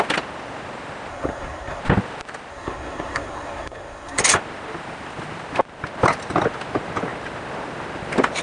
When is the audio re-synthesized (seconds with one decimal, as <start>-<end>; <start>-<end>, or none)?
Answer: 1.1-1.8; 2.5-4.2